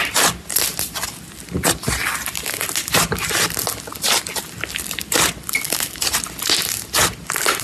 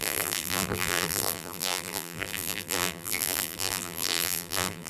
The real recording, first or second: first